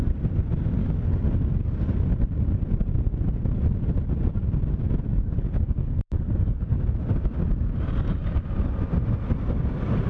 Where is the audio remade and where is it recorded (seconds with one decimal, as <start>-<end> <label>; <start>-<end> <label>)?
0.0-0.8 recorded; 0.8-1.3 remade; 1.3-5.1 recorded; 5.1-6.8 remade; 6.8-10.1 recorded